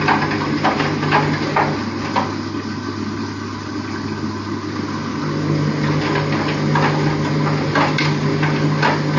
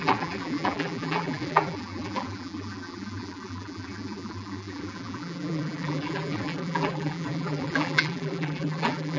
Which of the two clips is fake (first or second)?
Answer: second